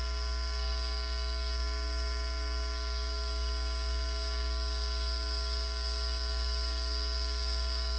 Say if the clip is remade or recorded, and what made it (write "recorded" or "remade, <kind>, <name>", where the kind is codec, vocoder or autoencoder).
remade, codec, DAC